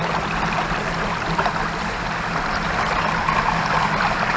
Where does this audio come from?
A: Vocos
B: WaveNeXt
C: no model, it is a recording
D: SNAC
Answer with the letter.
C